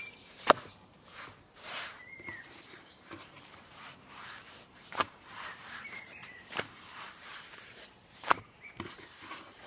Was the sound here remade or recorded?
remade